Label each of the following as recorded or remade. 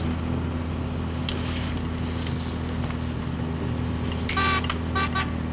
recorded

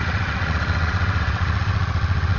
remade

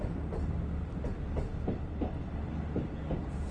recorded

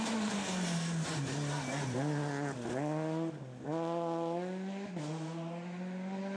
recorded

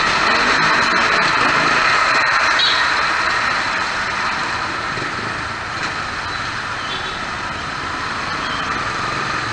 recorded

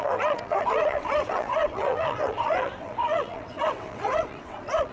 remade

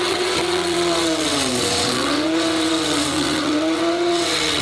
remade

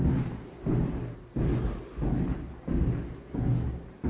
recorded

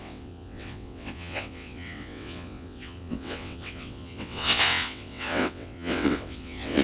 remade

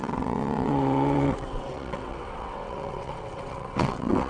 remade